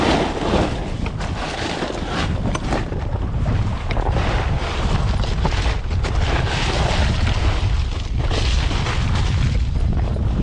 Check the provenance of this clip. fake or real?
real